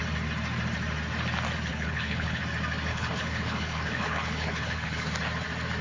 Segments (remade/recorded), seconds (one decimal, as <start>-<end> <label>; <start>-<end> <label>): 0.0-1.7 recorded; 1.7-2.4 remade; 2.4-2.9 recorded; 2.9-5.1 remade; 5.1-5.8 recorded